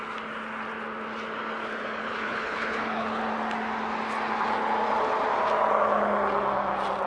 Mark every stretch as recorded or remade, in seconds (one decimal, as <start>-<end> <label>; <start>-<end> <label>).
0.0-2.0 recorded; 2.0-3.2 remade; 3.2-7.1 recorded